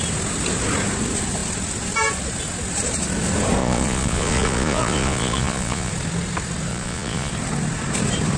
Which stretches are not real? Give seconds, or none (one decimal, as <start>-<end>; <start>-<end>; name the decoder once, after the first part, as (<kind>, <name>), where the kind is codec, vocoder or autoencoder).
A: 3.6-5.9 (vocoder, Vocos); 6.7-7.3